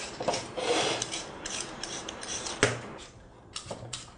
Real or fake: fake